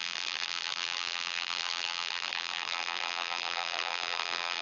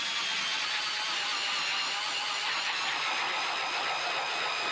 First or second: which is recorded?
second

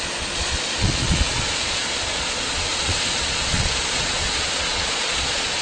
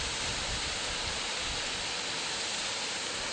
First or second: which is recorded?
second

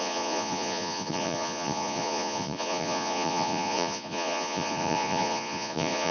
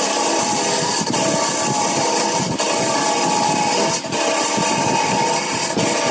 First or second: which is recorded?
second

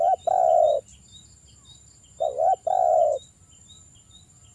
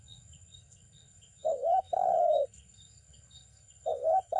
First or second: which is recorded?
first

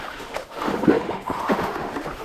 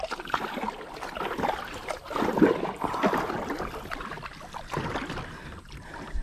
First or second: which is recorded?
second